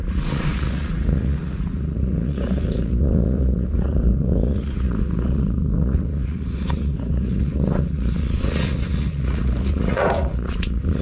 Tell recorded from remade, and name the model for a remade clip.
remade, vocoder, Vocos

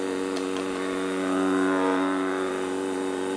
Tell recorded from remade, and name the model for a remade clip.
remade, vocoder, Vocos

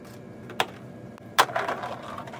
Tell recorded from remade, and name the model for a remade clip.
recorded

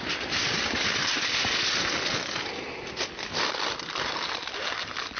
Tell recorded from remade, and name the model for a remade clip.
recorded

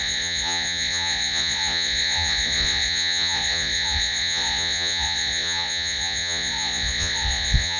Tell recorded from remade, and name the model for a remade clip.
remade, vocoder, Vocos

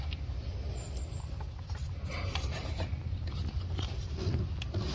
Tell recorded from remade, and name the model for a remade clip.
recorded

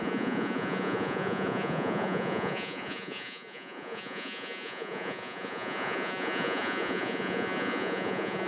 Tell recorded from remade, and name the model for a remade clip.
remade, vocoder, Vocos